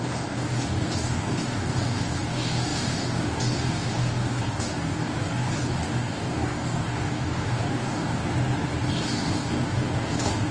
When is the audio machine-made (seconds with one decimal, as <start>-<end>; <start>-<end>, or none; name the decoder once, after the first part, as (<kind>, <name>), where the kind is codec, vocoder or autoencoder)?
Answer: 0.0-8.2 (codec, DAC); 8.9-10.5